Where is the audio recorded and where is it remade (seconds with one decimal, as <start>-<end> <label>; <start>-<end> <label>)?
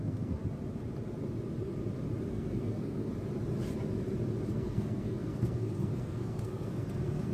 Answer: 0.0-0.4 remade; 0.4-2.3 recorded; 2.3-3.1 remade; 3.1-4.5 recorded; 4.5-7.3 remade